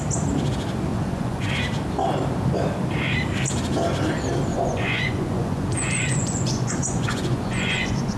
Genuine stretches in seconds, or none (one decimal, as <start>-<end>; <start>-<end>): 0.0-0.9; 1.5-4.5